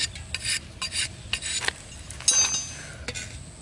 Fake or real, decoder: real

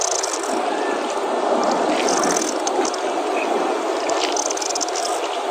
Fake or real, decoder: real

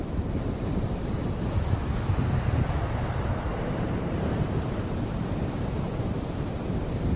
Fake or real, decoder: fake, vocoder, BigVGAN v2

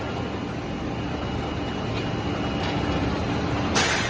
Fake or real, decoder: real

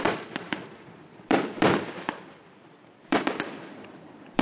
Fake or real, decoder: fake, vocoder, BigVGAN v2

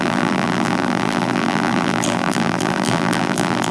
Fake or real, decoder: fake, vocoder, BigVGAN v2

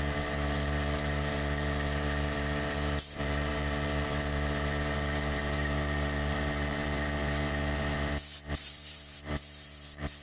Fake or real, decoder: fake, vocoder, BigVGAN v2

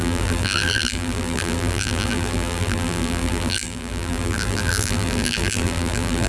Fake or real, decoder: fake, vocoder, BigVGAN v2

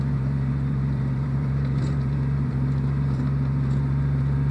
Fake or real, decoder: fake, vocoder, BigVGAN v2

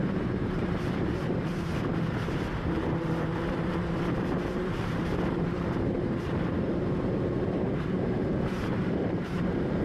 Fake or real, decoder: fake, vocoder, BigVGAN v2